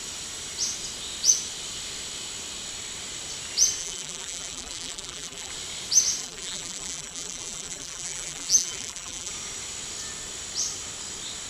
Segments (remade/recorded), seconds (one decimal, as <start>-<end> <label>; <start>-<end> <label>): 0.0-3.8 recorded; 3.8-5.5 remade; 5.5-6.2 recorded; 6.2-9.3 remade; 9.3-11.5 recorded

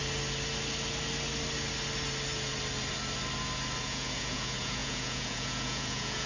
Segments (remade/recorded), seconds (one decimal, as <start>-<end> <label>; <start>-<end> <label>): 0.0-3.8 recorded; 3.8-6.3 remade

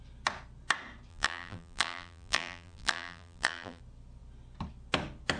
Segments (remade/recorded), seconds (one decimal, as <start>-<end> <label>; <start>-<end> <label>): 0.0-1.1 recorded; 1.1-3.8 remade; 3.8-5.4 recorded

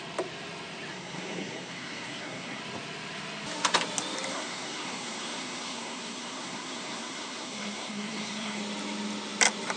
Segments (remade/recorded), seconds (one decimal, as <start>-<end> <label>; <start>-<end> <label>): 0.0-0.9 recorded; 0.9-2.6 remade; 2.6-4.3 recorded; 4.3-8.6 remade; 8.6-9.8 recorded

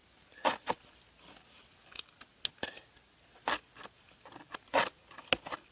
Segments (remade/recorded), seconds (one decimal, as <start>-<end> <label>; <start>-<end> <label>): 0.0-5.7 recorded

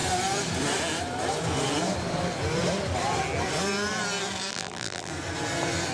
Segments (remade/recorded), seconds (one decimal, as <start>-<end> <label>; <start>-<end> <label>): 0.0-4.5 recorded; 4.5-5.1 remade; 5.1-5.9 recorded